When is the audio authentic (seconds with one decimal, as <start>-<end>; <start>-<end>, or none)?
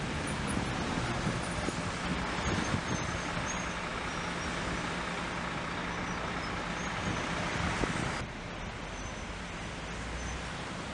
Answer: 0.0-10.9